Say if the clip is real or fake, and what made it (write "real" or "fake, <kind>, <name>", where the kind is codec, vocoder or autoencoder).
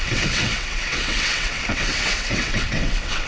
fake, vocoder, WaveNeXt